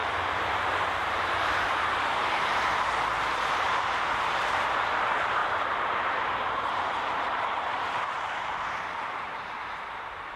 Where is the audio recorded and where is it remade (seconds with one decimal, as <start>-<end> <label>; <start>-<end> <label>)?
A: 0.0-10.4 remade